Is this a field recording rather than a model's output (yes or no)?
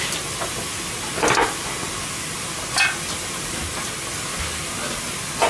yes